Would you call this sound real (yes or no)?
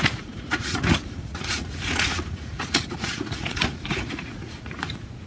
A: no